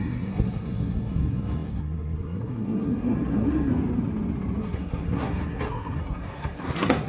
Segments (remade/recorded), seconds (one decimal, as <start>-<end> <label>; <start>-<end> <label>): 0.0-3.7 remade; 3.7-4.6 recorded; 4.6-7.1 remade